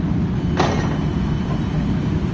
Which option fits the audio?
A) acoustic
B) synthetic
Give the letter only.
A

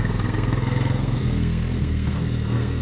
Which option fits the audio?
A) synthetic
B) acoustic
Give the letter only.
A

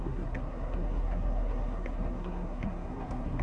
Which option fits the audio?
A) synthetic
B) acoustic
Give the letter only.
A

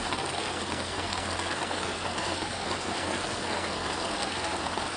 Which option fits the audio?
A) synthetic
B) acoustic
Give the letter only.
A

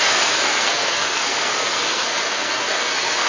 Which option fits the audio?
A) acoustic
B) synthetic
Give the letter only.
B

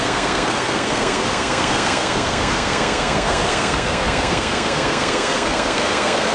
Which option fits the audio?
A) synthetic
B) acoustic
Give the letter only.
A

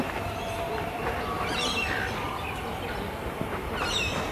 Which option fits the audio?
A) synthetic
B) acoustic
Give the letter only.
B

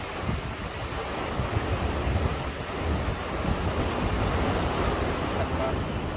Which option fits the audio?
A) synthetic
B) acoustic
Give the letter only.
B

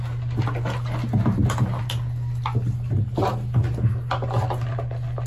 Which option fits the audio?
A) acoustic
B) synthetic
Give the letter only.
A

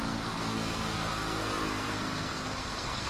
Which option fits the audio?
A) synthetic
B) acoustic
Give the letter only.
A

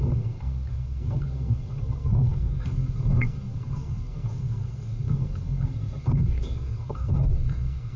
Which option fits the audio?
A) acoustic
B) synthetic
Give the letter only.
B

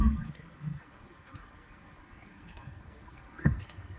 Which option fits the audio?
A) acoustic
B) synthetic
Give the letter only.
B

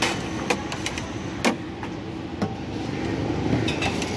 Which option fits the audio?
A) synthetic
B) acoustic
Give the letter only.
B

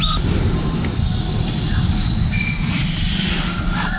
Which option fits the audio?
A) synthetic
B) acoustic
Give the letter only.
B